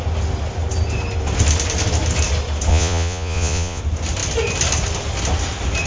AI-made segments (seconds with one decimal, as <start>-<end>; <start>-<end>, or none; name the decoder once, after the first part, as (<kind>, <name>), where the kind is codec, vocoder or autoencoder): 2.7-3.8 (vocoder, Vocos)